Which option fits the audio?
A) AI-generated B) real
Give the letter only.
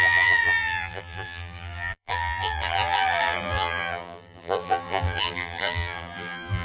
A